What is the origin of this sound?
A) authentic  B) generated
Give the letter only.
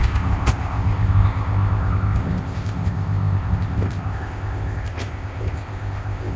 B